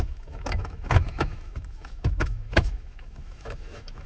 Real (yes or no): no